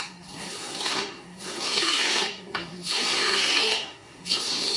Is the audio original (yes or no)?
no